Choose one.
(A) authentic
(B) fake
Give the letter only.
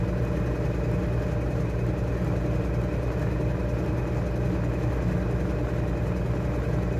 A